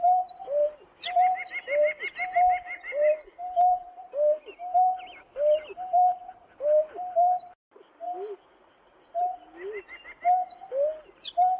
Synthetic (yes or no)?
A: no